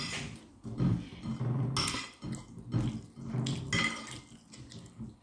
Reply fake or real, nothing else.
real